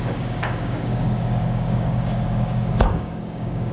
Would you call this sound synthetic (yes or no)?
yes